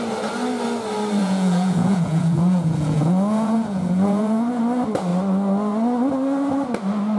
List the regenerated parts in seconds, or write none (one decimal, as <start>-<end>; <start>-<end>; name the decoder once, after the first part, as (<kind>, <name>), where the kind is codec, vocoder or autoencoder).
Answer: 1.2-4.6 (vocoder, Vocos)